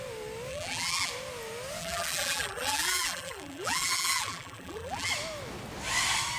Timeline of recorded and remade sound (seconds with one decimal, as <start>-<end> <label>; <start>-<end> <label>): 0.0-0.5 recorded; 0.5-1.1 remade; 1.1-1.8 recorded; 1.8-5.1 remade; 5.1-6.4 recorded